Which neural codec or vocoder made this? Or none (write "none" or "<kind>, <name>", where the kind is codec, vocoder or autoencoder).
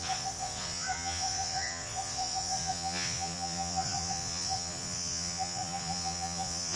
vocoder, Vocos